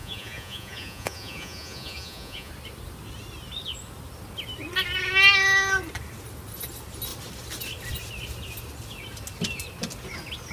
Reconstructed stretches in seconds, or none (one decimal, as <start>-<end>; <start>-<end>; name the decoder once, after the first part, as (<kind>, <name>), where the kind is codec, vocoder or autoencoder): 0.0-2.5 (vocoder, Vocos)